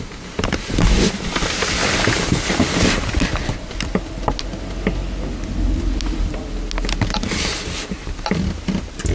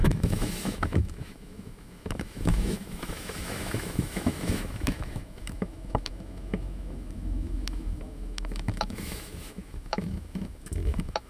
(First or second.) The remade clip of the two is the second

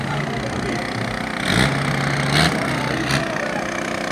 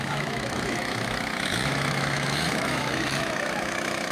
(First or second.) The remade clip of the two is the second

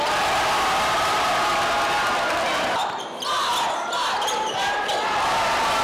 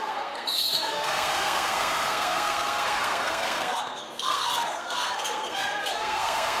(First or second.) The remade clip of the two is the second